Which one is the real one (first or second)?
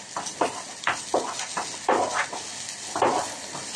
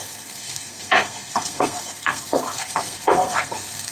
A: first